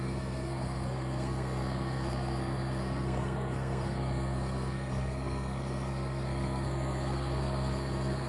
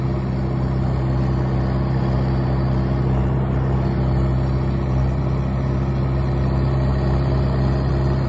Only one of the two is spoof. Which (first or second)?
first